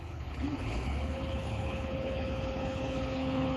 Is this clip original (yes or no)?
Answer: no